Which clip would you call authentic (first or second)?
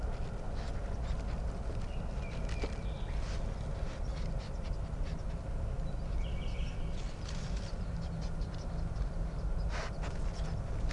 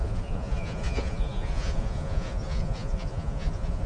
first